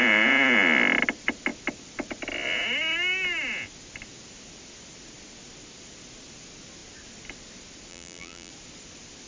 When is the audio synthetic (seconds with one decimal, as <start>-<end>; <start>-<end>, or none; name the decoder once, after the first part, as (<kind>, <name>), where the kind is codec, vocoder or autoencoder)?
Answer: 7.9-8.5 (vocoder, BigVGAN v2)